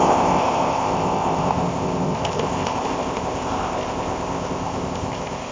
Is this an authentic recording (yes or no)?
no